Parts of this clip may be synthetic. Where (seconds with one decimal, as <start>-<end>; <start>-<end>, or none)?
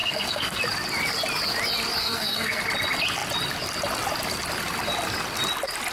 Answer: 0.0-0.6; 2.0-2.6